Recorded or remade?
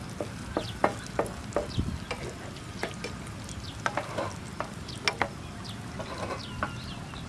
recorded